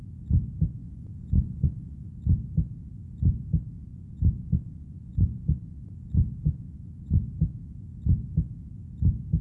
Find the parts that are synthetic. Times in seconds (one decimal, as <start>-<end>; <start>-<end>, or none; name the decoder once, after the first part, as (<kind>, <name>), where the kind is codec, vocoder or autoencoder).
0.8-2.1 (vocoder, Vocos); 3.9-5.8; 6.4-7.2